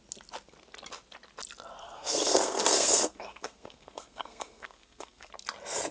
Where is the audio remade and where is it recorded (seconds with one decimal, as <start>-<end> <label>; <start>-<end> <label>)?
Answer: 0.0-1.8 recorded; 1.8-5.3 remade; 5.3-5.9 recorded